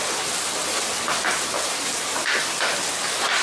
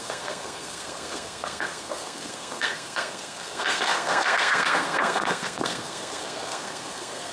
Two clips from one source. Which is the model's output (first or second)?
second